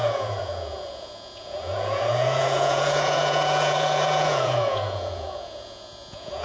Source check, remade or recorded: remade